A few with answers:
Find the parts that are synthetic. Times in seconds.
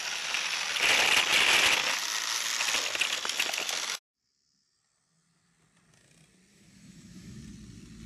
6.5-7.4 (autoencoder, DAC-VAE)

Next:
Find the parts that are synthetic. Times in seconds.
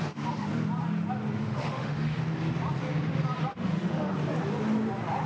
1.4-2.2 (autoencoder, DAC-VAE); 3.5-4.1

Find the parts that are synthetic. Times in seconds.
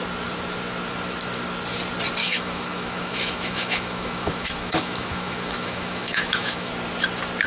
2.2-6.7 (autoencoder, DAC-VAE)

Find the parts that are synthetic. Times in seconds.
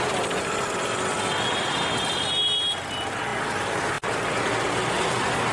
none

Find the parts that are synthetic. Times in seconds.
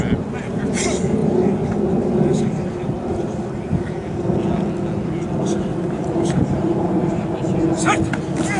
5.7-7.6 (vocoder, BigVGAN v2)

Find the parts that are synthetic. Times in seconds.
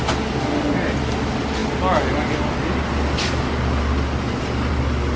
none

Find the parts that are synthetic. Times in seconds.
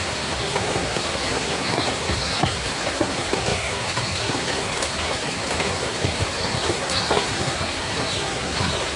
0.0-9.0 (codec, SNAC)